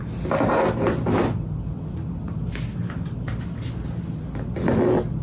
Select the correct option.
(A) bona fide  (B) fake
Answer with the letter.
A